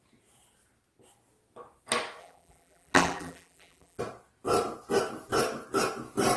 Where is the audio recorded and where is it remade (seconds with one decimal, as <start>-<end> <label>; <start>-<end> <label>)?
0.0-2.2 recorded; 2.2-4.0 remade; 4.0-6.4 recorded